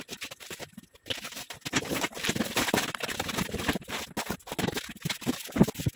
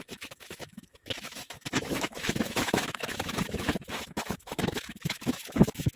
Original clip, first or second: first